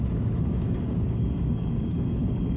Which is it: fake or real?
fake